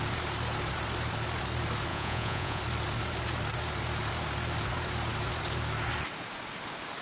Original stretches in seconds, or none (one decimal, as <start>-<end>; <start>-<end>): 0.0-1.9; 2.6-7.0